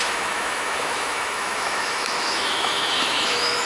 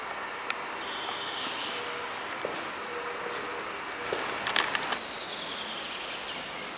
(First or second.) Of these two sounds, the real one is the second